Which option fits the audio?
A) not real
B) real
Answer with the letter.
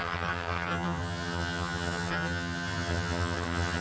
A